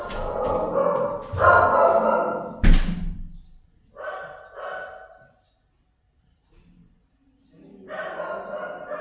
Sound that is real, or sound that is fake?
real